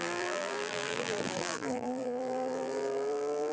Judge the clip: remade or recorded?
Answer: remade